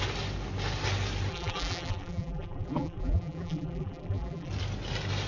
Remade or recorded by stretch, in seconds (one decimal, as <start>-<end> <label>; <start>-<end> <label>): 0.0-1.3 recorded; 1.3-4.5 remade; 4.5-5.3 recorded